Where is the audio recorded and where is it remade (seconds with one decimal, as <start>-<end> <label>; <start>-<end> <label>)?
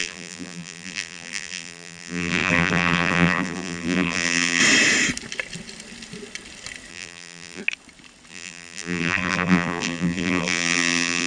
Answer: 0.0-4.6 remade; 4.6-6.9 recorded; 6.9-7.6 remade; 7.6-8.3 recorded; 8.3-11.3 remade